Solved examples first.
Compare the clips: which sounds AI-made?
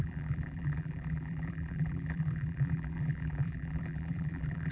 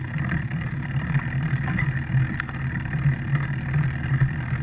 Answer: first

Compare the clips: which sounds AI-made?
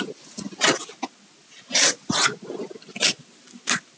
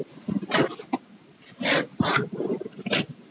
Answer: second